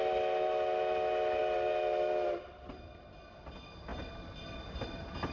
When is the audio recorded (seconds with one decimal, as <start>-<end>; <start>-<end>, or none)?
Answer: 0.0-5.3